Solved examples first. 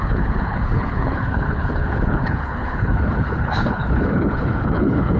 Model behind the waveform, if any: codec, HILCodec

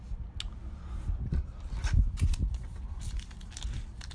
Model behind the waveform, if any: none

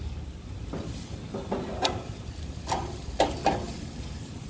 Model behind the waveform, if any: none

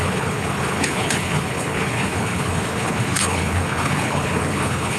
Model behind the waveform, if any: codec, HILCodec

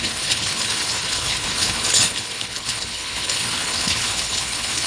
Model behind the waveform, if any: codec, HILCodec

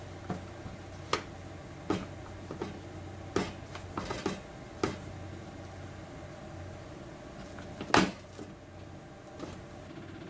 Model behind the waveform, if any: none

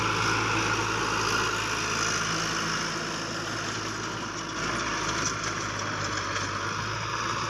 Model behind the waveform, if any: none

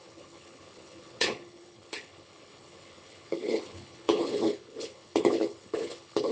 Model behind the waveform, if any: codec, HILCodec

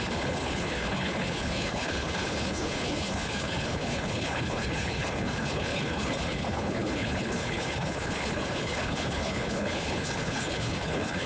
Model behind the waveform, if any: codec, HILCodec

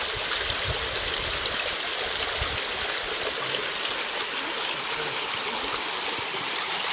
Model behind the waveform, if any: none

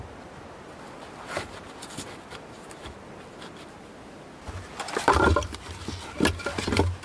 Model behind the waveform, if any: none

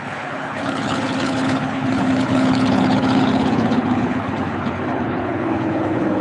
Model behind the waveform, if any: codec, HILCodec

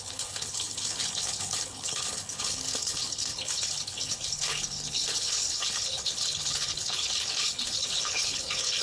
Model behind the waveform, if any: codec, HILCodec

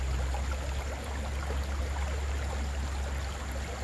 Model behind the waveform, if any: none